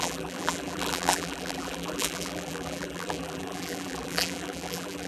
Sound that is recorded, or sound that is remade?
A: remade